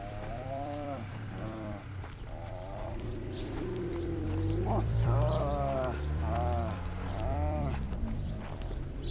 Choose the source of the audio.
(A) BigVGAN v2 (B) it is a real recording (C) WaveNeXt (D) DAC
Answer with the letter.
A